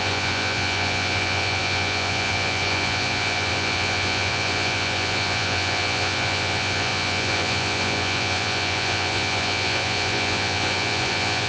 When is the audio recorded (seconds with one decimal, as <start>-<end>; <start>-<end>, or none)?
none